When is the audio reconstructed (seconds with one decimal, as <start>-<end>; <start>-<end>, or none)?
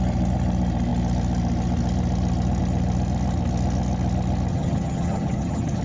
4.5-5.8